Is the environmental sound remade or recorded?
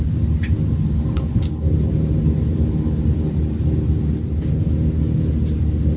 remade